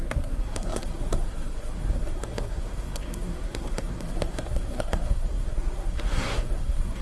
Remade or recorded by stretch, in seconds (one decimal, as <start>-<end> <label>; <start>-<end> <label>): 0.0-7.0 remade